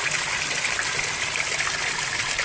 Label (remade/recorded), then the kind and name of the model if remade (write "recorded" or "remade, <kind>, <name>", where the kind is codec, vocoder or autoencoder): recorded